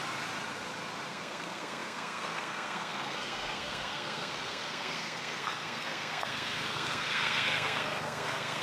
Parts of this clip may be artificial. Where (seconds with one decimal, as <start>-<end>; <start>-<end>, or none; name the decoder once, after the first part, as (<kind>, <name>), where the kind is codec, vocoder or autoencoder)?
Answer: 1.1-8.6 (codec, SNAC)